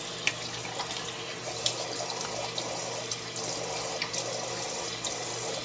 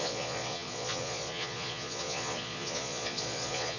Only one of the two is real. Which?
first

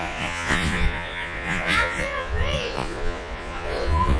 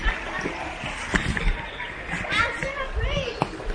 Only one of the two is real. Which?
second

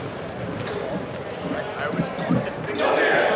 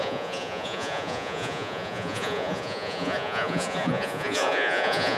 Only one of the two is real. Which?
first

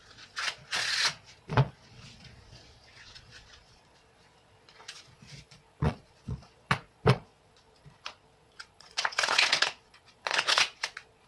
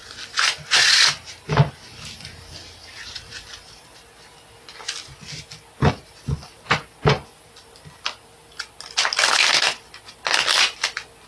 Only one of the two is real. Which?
second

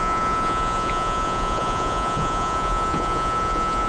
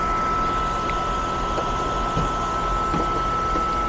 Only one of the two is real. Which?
second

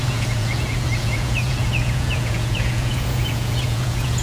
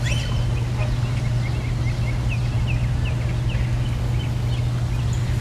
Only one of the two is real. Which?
second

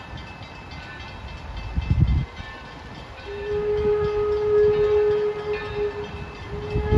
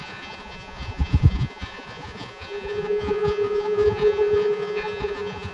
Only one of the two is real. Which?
first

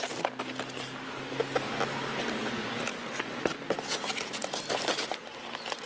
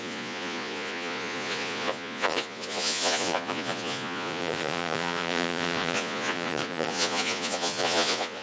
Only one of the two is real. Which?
first